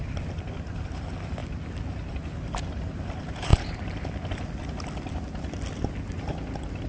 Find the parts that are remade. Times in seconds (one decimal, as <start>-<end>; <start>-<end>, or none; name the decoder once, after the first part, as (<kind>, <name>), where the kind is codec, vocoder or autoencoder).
none